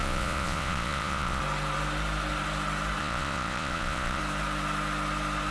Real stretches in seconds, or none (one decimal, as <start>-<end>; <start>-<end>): 1.4-3.0; 4.2-5.5